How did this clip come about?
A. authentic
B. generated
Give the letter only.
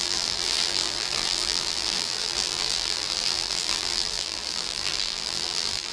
B